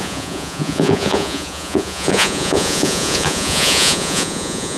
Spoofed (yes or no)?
yes